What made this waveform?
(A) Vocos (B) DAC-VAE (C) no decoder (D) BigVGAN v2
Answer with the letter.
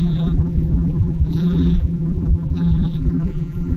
D